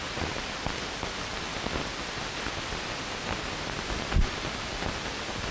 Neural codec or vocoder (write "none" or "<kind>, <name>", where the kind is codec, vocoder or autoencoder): none